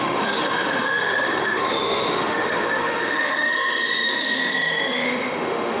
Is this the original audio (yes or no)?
no